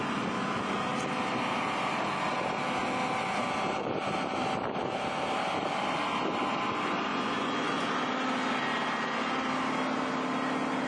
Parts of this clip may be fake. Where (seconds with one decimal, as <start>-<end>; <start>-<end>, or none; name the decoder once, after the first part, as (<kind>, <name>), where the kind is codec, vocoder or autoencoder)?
7.1-7.9 (vocoder, Vocos)